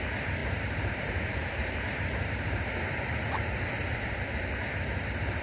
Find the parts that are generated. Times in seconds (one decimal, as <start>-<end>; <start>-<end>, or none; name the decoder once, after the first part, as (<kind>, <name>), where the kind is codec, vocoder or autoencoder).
none